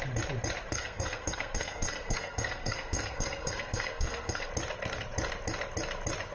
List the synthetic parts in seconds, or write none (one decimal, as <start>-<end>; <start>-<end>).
0.7-4.5